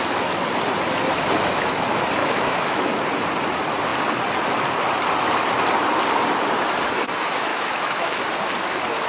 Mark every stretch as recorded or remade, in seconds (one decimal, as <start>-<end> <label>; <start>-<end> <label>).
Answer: 0.0-2.2 recorded; 2.2-3.0 remade; 3.0-7.5 recorded; 7.5-8.2 remade; 8.2-9.1 recorded